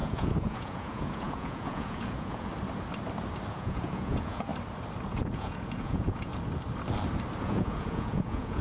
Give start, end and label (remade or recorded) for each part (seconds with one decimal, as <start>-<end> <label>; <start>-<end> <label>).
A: 0.0-2.5 remade; 2.5-3.5 recorded; 3.5-4.5 remade; 4.5-5.1 recorded; 5.1-6.3 remade; 6.3-7.4 recorded; 7.4-8.6 remade

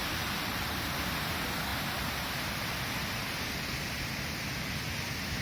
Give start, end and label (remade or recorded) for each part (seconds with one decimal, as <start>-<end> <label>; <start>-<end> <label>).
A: 0.0-5.4 recorded

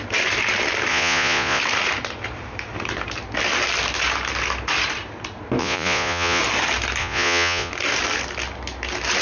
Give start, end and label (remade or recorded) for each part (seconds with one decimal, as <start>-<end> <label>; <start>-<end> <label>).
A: 0.0-0.9 recorded; 0.9-1.6 remade; 1.6-5.6 recorded; 5.6-6.4 remade; 6.4-7.0 recorded; 7.0-7.7 remade; 7.7-9.2 recorded

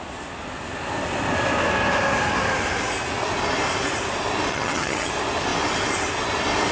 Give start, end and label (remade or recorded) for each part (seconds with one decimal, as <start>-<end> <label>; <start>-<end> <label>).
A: 0.0-4.5 recorded; 4.5-5.1 remade; 5.1-6.7 recorded

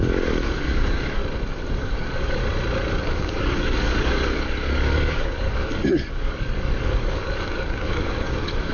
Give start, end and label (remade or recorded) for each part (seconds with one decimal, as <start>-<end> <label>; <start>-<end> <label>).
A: 0.0-1.2 remade; 1.2-1.8 recorded; 1.8-2.4 remade; 2.4-3.0 recorded; 3.0-8.7 remade